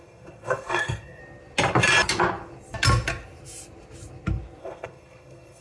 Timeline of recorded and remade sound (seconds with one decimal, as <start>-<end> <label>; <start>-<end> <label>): 0.0-1.2 remade; 1.2-4.6 recorded; 4.6-5.6 remade